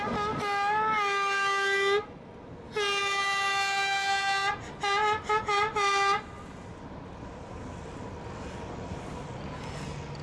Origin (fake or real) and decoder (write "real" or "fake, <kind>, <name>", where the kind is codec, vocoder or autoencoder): real